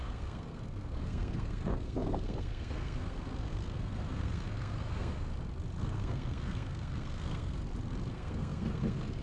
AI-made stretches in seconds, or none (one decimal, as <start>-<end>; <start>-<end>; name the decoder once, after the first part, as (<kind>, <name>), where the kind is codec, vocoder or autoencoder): 0.0-5.3 (codec, SNAC); 5.8-7.6; 8.1-9.2